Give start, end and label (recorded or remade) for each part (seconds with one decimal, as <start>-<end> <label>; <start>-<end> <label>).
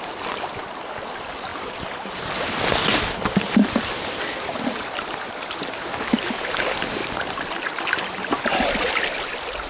0.0-9.7 recorded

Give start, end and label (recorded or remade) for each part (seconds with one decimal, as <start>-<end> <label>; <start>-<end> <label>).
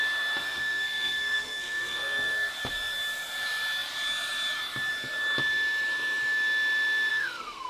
0.0-0.4 recorded; 0.4-2.5 remade; 2.5-7.1 recorded; 7.1-7.7 remade